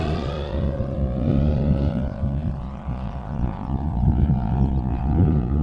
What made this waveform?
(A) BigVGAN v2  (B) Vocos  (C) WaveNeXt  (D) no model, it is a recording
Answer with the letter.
B